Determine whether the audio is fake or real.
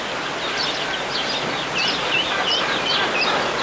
real